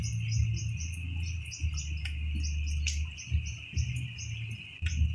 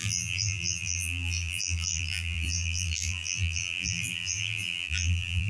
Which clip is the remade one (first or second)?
second